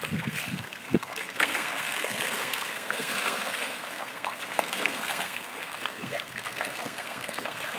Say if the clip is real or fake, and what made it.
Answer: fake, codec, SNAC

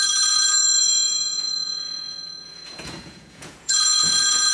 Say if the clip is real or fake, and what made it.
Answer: fake, vocoder, Vocos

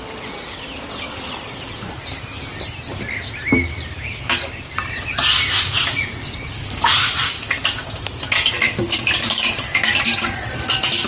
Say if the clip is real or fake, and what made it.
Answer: fake, vocoder, BigVGAN v2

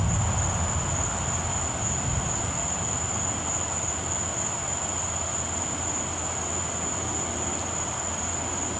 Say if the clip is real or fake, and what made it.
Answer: real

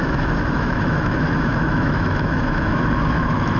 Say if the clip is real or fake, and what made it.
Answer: fake, autoencoder, DAC-VAE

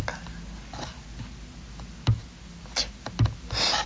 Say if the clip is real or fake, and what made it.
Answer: real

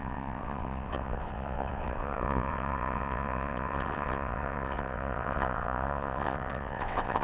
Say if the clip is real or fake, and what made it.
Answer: fake, vocoder, WaveNeXt